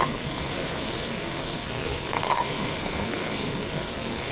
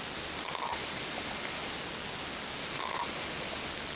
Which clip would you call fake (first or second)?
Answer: first